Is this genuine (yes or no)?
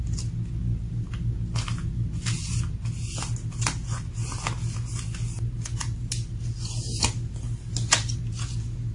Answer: yes